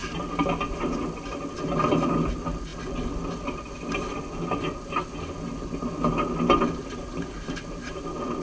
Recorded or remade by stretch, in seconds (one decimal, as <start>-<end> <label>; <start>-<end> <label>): 0.0-8.4 recorded